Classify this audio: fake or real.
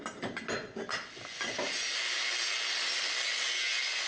real